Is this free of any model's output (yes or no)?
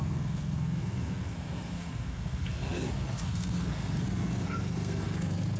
no